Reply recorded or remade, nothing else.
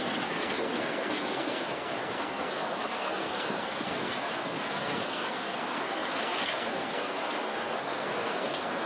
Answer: remade